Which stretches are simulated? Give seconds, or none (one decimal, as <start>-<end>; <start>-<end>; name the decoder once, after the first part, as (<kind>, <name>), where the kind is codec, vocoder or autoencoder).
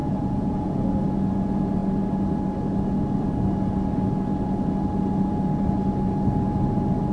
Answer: 0.0-0.9 (vocoder, Vocos)